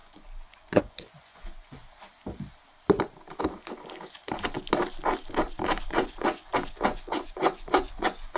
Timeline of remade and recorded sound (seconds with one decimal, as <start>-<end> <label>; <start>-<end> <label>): 0.0-1.8 remade; 1.8-5.8 recorded; 5.8-8.4 remade